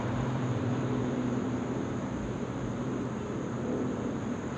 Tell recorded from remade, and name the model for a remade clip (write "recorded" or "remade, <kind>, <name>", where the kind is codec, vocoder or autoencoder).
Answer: remade, vocoder, BigVGAN v2